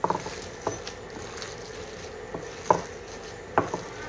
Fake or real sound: real